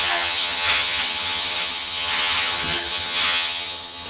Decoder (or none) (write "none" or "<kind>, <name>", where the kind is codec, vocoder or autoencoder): vocoder, HiFi-GAN